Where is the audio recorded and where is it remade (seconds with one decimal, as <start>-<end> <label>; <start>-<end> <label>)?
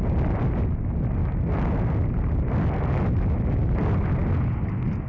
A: 0.0-5.1 recorded